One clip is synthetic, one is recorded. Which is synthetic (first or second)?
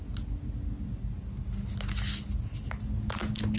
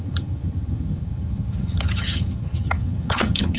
second